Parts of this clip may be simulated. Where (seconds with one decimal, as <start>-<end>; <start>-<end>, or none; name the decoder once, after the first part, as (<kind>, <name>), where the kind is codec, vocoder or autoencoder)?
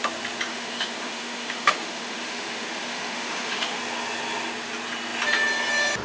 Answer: 0.5-3.8 (autoencoder, DAC-VAE)